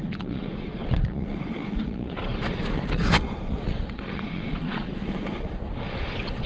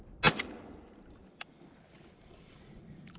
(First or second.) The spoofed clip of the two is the first